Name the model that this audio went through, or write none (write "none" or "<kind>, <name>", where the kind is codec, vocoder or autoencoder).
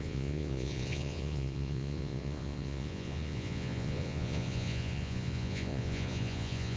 vocoder, Vocos